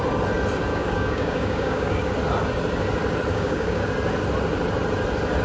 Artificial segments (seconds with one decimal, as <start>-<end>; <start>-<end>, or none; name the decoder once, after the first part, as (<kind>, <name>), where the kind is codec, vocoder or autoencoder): 0.7-2.1 (codec, DAC); 3.3-3.9